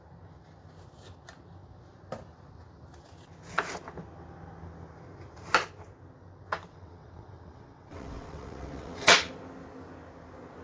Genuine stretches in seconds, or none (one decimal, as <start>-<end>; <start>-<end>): 0.0-6.7; 9.3-10.6